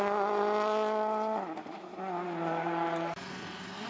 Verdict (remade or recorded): recorded